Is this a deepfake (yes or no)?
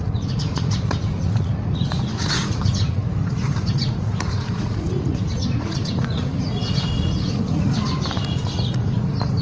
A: yes